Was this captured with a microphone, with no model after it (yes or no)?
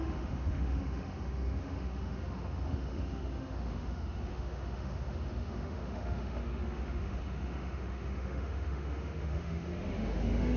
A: no